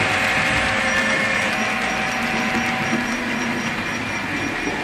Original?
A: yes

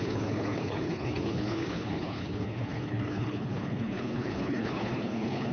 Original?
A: no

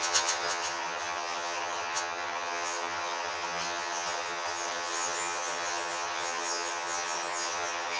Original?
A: no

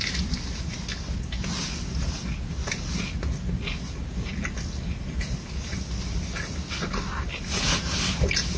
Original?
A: yes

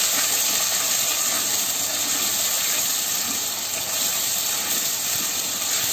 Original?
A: yes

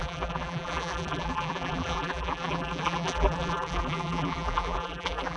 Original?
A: no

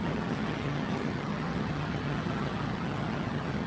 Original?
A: no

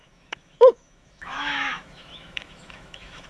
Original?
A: no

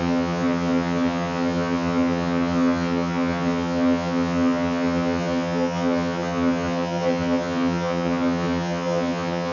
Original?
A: no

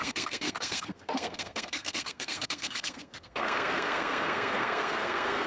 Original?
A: no